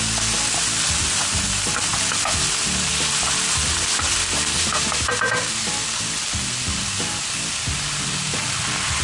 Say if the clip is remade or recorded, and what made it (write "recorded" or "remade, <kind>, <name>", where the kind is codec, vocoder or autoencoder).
recorded